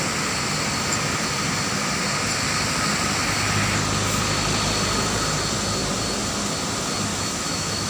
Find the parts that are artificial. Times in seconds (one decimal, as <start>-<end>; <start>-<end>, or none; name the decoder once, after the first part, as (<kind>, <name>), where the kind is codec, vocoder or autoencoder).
7.1-7.9 (autoencoder, DAC-VAE)